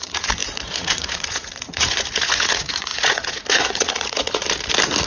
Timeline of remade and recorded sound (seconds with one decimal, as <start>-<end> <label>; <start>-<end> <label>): 0.0-4.4 remade; 4.4-5.1 recorded